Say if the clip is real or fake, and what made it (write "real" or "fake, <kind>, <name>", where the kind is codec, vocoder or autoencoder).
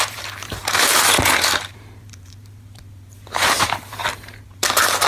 fake, vocoder, BigVGAN v2